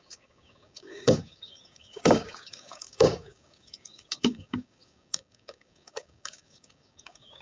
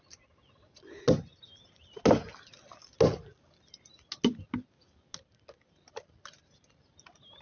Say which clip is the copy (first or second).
first